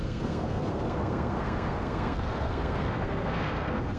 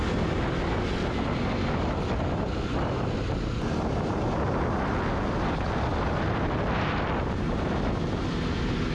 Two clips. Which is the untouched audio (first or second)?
second